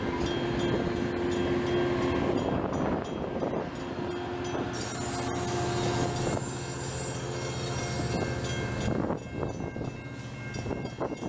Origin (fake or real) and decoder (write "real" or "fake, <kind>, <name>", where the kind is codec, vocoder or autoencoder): real